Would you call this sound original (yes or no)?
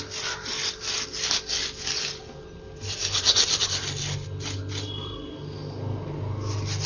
yes